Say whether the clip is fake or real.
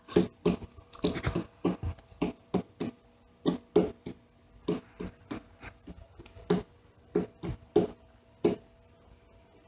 real